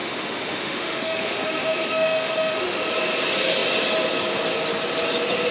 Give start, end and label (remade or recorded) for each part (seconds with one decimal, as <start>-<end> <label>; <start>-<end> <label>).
0.0-2.9 remade; 2.9-5.5 recorded